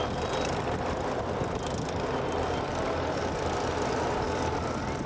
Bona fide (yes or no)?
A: yes